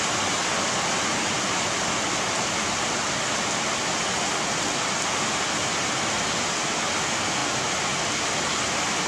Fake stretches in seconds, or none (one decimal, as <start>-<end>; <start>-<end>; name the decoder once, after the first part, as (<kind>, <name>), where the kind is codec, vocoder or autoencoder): none